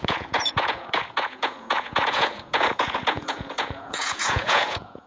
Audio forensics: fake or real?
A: fake